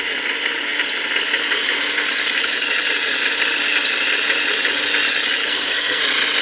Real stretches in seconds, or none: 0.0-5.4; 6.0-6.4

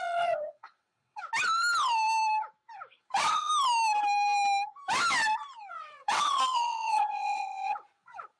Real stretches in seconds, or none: 1.2-3.0; 3.5-5.7

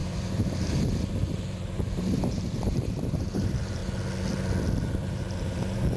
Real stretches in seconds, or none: 3.8-5.1

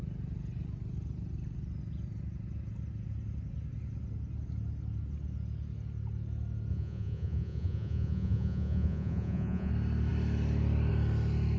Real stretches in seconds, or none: 0.0-6.7; 9.7-11.6

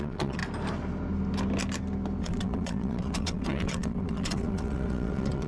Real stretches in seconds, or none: 0.4-2.2